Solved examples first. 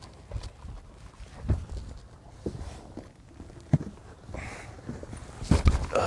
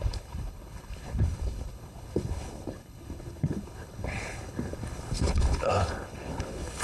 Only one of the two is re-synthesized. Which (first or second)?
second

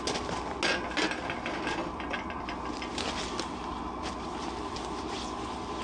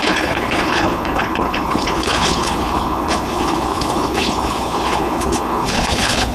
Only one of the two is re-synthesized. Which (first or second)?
second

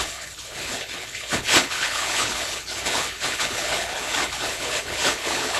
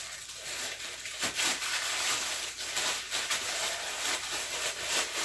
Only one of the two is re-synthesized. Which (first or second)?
first